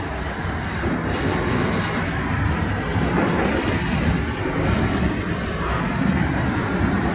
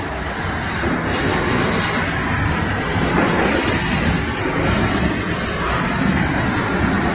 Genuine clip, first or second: second